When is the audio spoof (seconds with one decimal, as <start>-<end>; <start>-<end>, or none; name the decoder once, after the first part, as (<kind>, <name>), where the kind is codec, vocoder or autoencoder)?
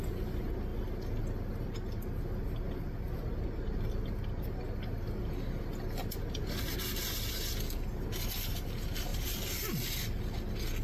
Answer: none